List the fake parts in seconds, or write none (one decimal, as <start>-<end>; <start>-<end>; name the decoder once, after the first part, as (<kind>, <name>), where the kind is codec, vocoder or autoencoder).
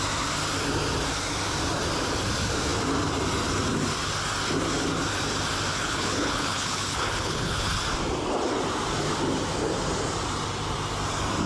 5.7-7.7 (codec, HILCodec)